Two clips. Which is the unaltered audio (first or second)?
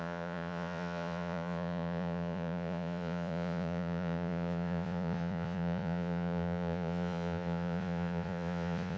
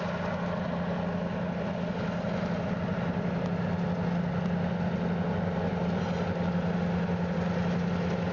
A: second